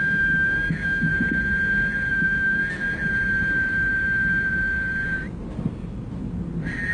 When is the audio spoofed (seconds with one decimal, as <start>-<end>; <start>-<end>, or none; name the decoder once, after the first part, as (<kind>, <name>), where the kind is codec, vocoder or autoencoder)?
0.0-1.1 (autoencoder, DAC-VAE); 2.1-2.6